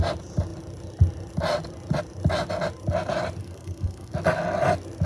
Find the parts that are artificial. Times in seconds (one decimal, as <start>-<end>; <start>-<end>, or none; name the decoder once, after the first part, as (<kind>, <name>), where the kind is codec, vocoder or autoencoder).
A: 3.4-4.1 (codec, SNAC)